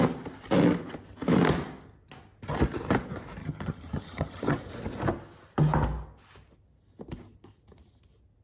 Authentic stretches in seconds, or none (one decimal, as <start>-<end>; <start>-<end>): 0.0-3.4; 4.7-8.4